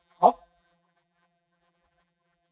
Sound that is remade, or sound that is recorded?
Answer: remade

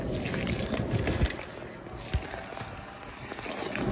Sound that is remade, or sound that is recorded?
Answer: recorded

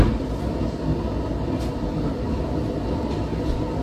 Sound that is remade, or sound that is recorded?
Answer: recorded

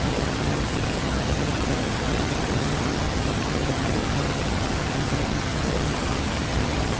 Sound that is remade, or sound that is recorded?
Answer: remade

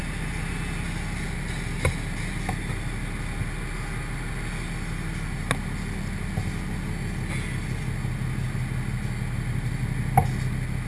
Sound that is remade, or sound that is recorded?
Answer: recorded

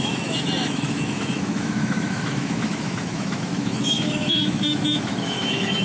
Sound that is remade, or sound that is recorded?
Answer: remade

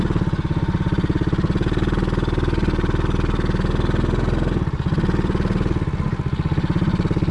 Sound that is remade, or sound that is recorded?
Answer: recorded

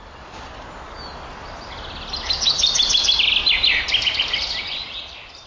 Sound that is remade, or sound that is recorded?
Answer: recorded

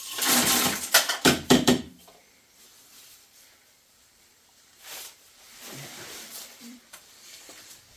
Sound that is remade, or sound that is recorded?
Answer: remade